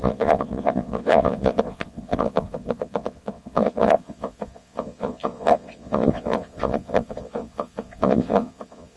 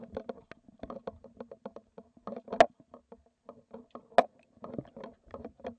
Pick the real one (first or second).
second